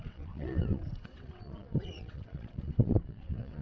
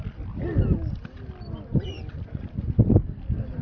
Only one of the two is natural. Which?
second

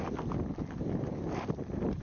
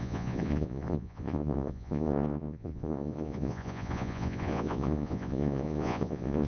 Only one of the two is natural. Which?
first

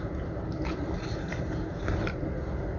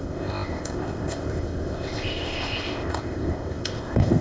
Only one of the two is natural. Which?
first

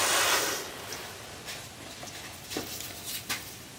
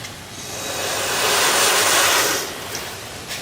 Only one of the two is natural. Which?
first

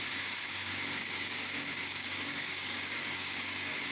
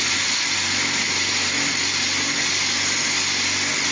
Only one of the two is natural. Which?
second